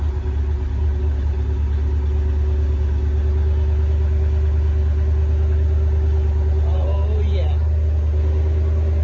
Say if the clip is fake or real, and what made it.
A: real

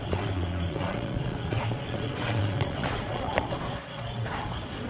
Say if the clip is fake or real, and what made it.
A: fake, vocoder, Vocos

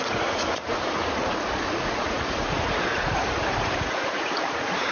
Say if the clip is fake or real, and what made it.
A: fake, vocoder, Vocos